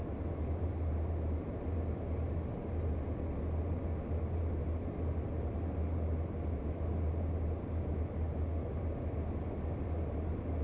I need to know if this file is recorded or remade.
recorded